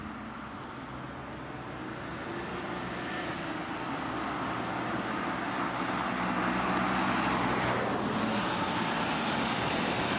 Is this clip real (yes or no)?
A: yes